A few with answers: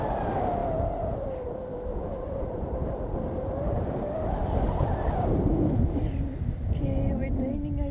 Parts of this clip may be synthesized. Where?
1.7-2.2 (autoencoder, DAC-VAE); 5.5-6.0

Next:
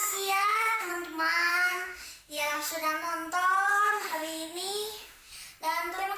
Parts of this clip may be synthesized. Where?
0.0-0.9 (autoencoder, DAC-VAE); 1.5-2.7; 3.7-5.3

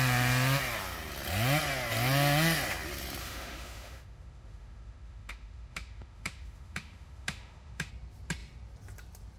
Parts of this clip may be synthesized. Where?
3.2-7.9 (autoencoder, DAC-VAE)

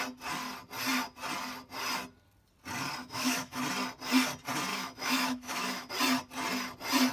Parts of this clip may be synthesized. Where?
3.0-3.6 (autoencoder, DAC-VAE); 4.7-5.9

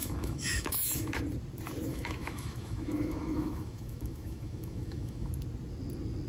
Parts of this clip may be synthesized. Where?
0.0-1.2 (autoencoder, DAC-VAE); 1.9-5.3

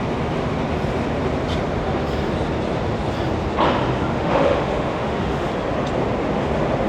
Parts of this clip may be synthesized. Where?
4.1-5.5 (autoencoder, DAC-VAE)

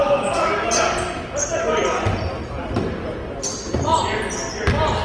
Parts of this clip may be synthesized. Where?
0.0-0.7 (autoencoder, DAC-VAE)